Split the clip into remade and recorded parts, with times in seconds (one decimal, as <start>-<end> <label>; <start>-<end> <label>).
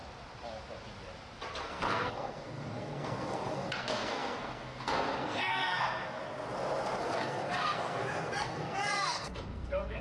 0.0-1.6 recorded; 1.6-6.2 remade; 6.2-7.0 recorded; 7.0-10.0 remade